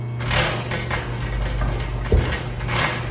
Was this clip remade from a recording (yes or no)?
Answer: no